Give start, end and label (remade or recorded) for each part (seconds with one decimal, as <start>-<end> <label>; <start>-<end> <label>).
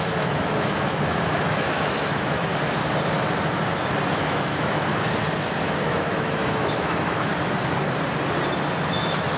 0.0-2.5 remade; 2.5-4.1 recorded; 4.1-4.9 remade; 4.9-5.6 recorded; 5.6-7.3 remade; 7.3-8.9 recorded; 8.9-9.4 remade